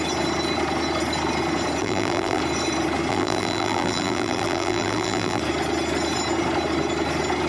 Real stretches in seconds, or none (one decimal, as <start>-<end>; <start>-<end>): 0.0-1.8; 2.4-3.1; 5.4-7.5